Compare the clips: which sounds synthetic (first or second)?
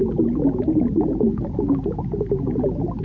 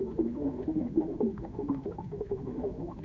second